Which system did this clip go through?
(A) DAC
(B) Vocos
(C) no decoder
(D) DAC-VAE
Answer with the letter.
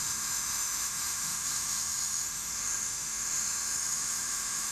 D